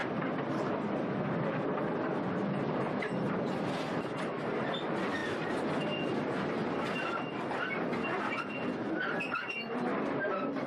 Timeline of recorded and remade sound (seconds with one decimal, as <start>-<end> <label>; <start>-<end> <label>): 0.0-5.2 remade; 5.2-8.9 recorded; 8.9-10.7 remade